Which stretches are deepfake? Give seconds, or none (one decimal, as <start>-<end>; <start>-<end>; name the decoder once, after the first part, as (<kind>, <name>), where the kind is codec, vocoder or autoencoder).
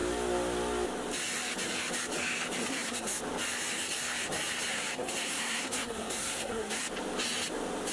2.7-3.2 (codec, SNAC); 4.7-6.8